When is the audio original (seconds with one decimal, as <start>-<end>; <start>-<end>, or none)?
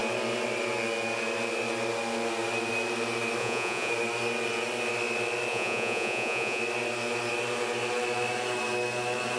0.0-3.4; 3.9-5.5; 6.6-9.4